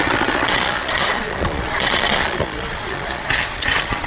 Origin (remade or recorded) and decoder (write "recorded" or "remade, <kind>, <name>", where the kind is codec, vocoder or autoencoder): remade, vocoder, Vocos